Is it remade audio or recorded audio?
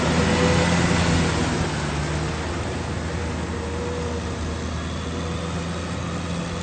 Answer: recorded